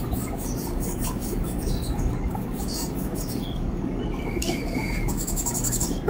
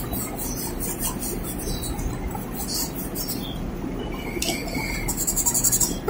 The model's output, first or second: first